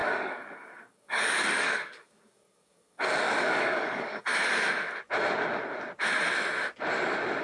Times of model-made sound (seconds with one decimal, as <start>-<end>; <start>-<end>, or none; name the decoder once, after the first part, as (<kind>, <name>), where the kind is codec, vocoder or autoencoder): 0.0-4.4 (codec, DAC)